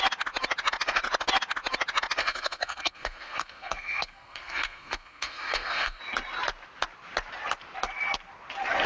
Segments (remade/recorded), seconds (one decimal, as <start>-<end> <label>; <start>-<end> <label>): 0.0-2.2 recorded; 2.2-6.0 remade; 6.0-8.9 recorded

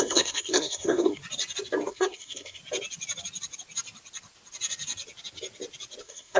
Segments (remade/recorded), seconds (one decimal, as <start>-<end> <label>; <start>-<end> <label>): 0.0-1.2 remade; 1.2-1.9 recorded; 1.9-2.6 remade; 2.6-6.0 recorded; 6.0-6.4 remade

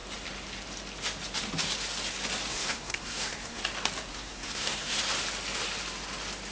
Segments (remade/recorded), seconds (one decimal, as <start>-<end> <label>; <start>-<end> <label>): 0.0-2.5 recorded; 2.5-3.6 remade; 3.6-4.1 recorded; 4.1-5.0 remade; 5.0-6.5 recorded